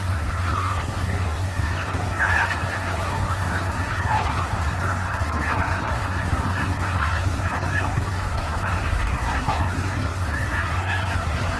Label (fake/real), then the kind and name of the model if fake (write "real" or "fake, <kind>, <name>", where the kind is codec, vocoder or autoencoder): fake, codec, SNAC